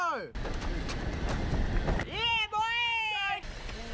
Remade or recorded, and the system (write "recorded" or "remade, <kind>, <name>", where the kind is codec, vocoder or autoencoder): recorded